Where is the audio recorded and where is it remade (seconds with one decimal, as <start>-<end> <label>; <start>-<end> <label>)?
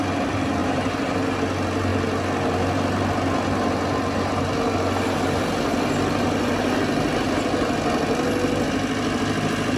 0.0-0.6 recorded; 0.6-1.4 remade; 1.4-9.8 recorded